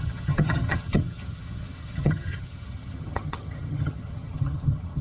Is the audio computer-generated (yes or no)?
yes